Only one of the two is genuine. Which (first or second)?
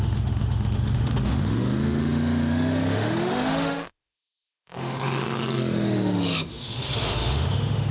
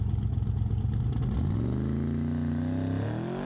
second